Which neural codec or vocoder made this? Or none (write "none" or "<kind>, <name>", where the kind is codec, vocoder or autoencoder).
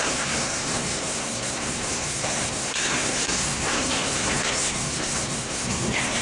codec, SNAC